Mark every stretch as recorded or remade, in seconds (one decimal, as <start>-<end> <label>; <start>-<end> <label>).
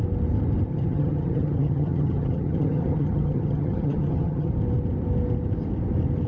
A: 0.0-0.7 recorded; 0.7-4.5 remade; 4.5-6.3 recorded